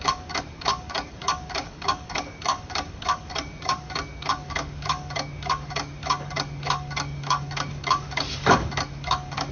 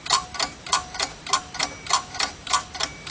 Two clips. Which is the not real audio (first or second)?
first